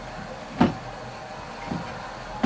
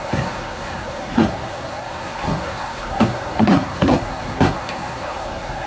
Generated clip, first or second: second